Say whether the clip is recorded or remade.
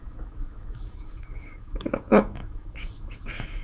remade